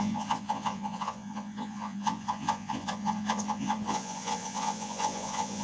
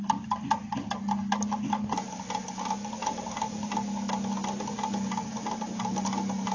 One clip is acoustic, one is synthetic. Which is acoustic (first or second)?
second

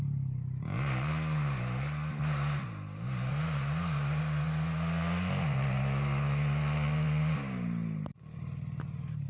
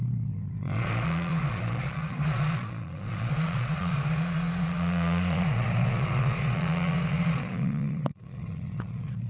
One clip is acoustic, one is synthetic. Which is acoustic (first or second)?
first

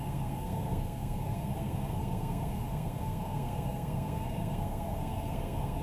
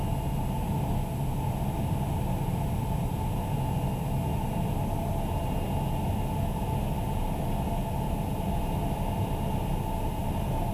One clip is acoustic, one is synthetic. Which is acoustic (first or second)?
second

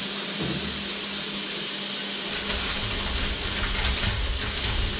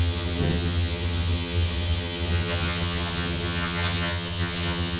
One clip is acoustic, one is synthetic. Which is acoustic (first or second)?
first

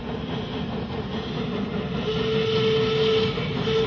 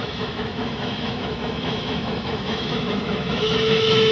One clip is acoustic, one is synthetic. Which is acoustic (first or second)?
first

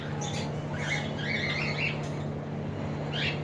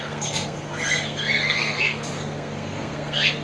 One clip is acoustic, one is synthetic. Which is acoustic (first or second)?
first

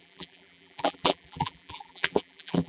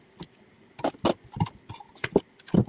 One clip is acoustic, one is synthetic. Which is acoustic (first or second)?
second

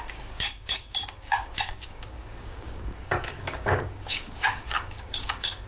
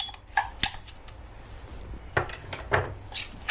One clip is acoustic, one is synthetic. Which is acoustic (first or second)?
second